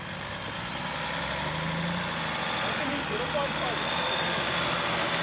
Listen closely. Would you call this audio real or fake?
real